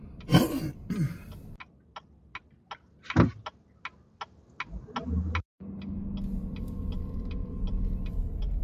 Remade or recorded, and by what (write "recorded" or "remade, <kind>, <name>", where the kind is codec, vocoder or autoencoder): recorded